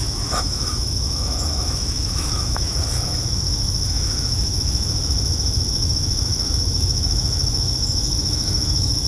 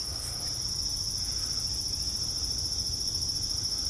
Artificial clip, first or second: first